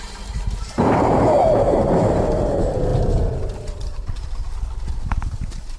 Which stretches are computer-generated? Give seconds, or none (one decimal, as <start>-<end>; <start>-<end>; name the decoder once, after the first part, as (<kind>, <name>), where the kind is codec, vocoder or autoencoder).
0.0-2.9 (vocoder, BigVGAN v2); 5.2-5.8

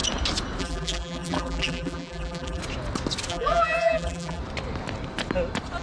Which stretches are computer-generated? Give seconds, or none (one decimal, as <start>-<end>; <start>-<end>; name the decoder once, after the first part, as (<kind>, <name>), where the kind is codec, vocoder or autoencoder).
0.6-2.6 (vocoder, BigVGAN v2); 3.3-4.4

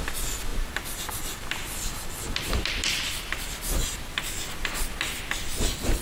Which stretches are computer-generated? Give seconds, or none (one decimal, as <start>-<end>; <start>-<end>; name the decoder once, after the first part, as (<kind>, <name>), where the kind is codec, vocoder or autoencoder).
0.5-3.1 (vocoder, BigVGAN v2); 3.8-4.9

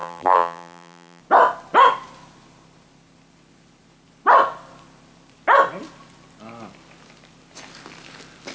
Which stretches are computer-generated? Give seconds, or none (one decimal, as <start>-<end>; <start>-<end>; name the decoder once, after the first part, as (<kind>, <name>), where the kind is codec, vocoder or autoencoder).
0.0-1.2 (vocoder, BigVGAN v2)

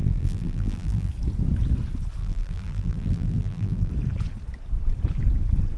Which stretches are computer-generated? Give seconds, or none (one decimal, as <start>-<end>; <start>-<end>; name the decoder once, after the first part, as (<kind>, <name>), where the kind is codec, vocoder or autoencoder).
0.0-1.1 (vocoder, BigVGAN v2); 2.2-3.9